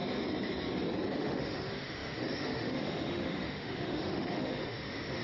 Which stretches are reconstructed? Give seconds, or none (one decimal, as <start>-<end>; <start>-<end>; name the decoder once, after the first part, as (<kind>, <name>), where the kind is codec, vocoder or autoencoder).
1.1-5.2 (autoencoder, DAC-VAE)